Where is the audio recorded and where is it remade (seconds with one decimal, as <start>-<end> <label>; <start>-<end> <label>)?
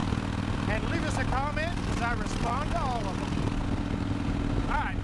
0.0-5.0 recorded